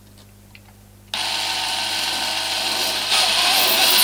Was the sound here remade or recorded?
recorded